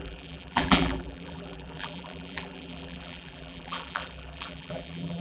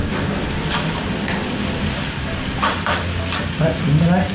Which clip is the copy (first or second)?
first